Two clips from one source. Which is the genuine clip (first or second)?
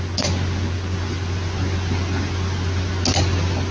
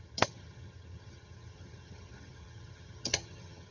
first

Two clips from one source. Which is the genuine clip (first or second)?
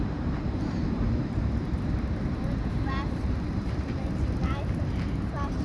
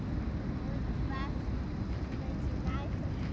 second